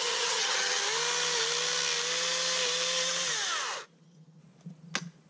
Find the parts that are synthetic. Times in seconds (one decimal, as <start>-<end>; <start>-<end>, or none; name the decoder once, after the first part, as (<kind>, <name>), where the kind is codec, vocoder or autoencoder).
0.0-0.8 (vocoder, HiFi-GAN); 4.0-4.4